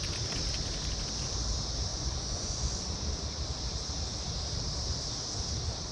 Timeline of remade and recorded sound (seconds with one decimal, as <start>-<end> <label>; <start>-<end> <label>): 0.0-1.9 recorded; 1.9-2.8 remade; 2.8-5.9 recorded